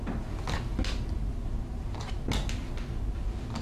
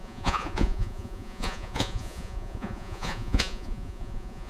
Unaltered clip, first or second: first